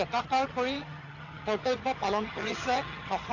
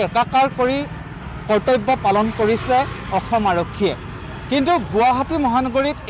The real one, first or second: second